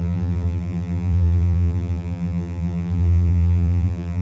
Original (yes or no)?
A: no